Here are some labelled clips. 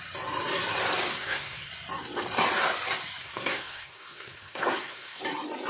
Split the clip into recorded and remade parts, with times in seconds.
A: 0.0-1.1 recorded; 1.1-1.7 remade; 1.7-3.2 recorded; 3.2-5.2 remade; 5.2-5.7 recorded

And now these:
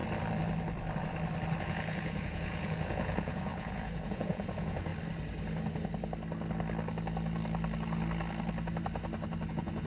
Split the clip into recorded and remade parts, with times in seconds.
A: 0.0-1.6 recorded; 1.6-4.9 remade; 4.9-9.5 recorded; 9.5-9.9 remade

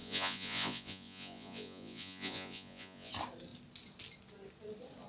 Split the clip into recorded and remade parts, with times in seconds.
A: 0.0-3.1 remade; 3.1-5.1 recorded

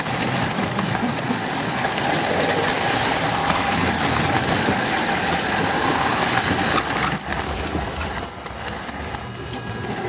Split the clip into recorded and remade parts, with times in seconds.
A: 0.0-3.4 recorded; 3.4-4.2 remade; 4.2-10.1 recorded

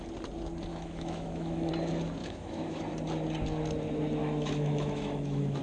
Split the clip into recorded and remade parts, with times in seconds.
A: 0.0-0.7 recorded; 0.7-1.7 remade; 1.7-2.2 recorded; 2.2-2.8 remade; 2.8-4.2 recorded; 4.2-5.6 remade

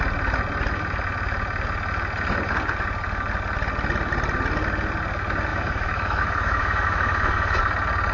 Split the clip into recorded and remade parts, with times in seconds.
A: 0.0-5.5 recorded; 5.5-7.6 remade; 7.6-8.1 recorded